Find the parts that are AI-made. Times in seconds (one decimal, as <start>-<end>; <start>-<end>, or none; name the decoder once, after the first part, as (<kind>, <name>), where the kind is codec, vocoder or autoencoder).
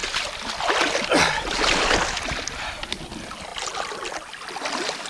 none